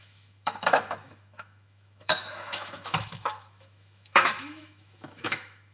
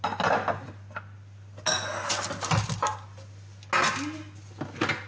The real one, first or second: second